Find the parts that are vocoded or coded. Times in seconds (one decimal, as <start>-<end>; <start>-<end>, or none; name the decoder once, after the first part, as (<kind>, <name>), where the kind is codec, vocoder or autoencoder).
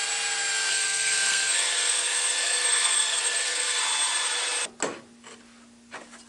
0.7-3.8 (codec, SNAC)